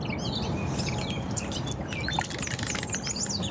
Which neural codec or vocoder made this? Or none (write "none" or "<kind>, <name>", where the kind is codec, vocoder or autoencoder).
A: none